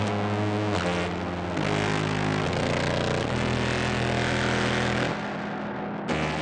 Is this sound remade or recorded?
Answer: recorded